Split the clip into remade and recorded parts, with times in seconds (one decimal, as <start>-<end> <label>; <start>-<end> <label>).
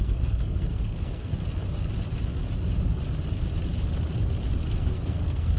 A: 0.0-1.3 remade; 1.3-4.7 recorded; 4.7-5.6 remade